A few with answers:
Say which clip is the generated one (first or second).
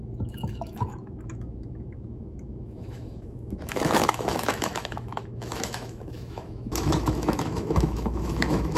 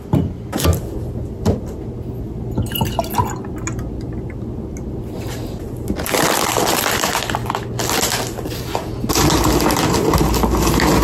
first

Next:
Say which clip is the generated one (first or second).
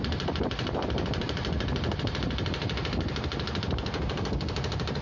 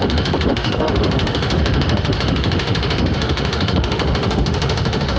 second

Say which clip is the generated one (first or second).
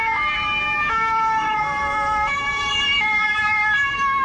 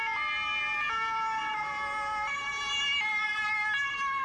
first